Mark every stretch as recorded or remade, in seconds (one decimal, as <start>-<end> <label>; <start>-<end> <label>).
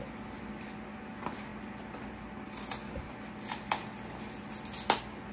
0.0-5.3 recorded